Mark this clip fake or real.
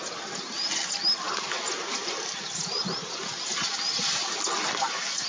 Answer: real